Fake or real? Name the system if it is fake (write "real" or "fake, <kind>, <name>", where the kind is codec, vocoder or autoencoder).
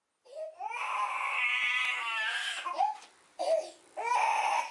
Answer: real